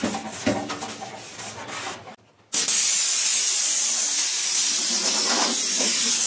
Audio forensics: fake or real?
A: real